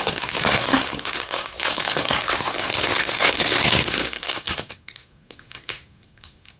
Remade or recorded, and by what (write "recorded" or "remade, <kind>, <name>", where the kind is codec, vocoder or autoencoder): remade, codec, SNAC